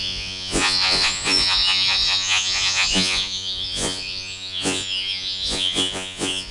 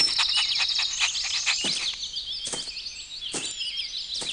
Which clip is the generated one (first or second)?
first